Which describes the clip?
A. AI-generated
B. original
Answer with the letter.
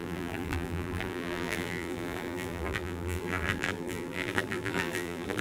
A